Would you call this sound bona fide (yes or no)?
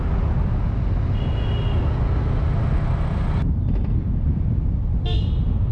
yes